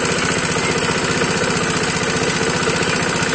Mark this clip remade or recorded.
recorded